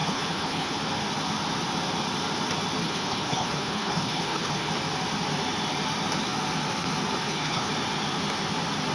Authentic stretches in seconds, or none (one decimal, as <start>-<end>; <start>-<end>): 0.8-2.8; 4.7-7.2; 7.7-8.9